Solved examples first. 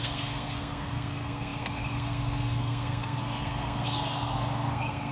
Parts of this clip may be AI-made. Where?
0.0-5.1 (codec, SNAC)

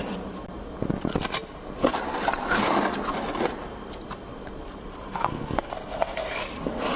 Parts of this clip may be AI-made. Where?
5.1-5.7 (codec, SNAC)

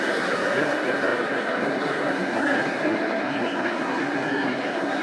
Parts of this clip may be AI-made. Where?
0.0-5.0 (codec, SNAC)

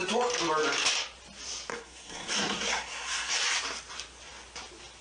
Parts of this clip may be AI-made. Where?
1.7-3.3 (codec, SNAC)

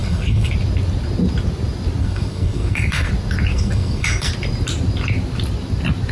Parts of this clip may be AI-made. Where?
0.0-0.5 (codec, SNAC); 2.0-3.1; 3.5-4.3

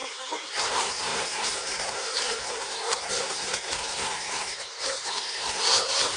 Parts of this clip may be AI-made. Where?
0.0-6.2 (codec, SNAC)

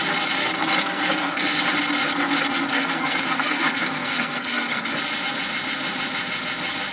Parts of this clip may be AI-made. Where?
0.4-1.6 (codec, SNAC); 2.7-4.9

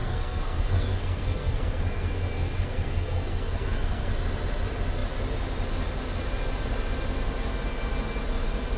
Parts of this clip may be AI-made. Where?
0.0-4.1 (codec, SNAC)